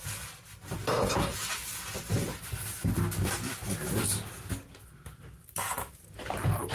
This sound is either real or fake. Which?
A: real